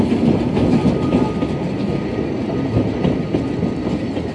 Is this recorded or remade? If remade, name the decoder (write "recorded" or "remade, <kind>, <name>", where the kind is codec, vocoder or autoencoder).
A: recorded